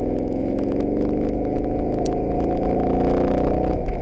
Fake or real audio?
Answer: fake